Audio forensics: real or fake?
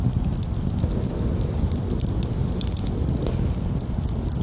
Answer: real